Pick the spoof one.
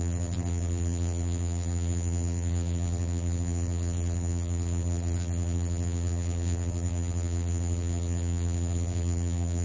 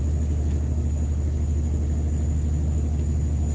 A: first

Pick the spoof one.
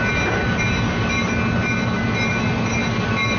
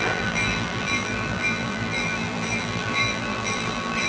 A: second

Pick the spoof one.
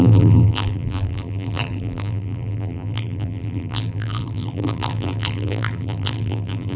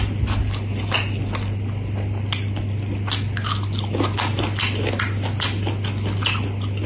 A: first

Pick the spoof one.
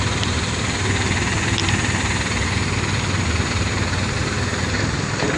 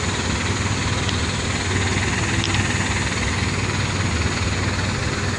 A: first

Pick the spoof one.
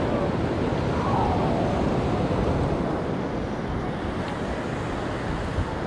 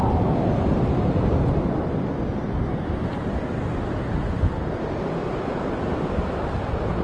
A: second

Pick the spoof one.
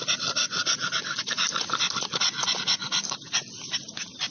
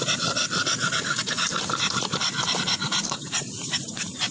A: second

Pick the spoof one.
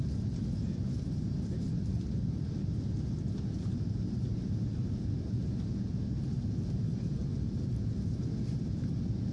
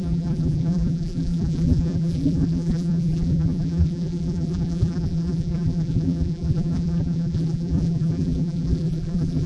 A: second